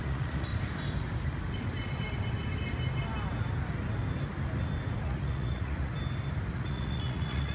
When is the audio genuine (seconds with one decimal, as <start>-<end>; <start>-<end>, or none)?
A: 0.5-5.0; 5.9-6.5